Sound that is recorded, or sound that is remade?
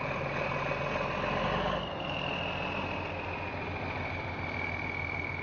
recorded